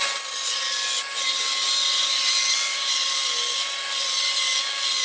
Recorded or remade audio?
recorded